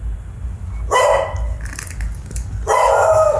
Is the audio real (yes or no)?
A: yes